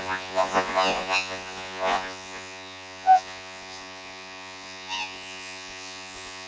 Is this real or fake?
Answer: fake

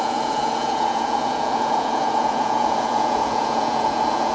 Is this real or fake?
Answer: fake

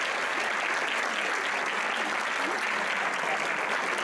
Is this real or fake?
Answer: real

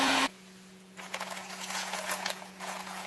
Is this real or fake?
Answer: fake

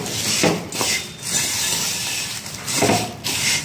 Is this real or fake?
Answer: real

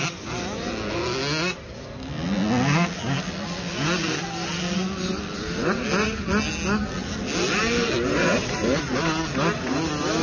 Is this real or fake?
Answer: real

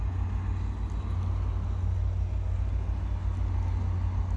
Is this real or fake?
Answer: real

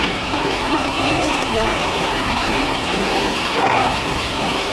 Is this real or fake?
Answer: fake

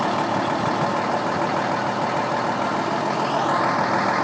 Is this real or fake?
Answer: real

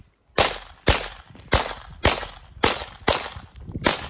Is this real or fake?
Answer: real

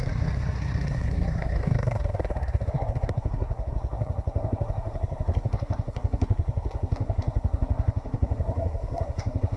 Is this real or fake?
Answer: fake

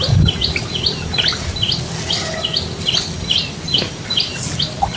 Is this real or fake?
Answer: real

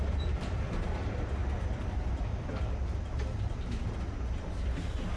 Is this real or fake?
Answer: fake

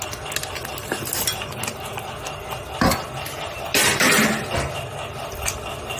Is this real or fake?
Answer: real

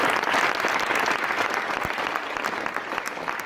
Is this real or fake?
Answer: real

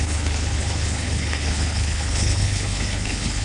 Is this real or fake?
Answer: fake